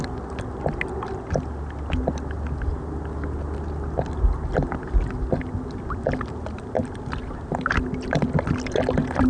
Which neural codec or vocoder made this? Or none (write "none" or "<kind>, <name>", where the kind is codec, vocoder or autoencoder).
none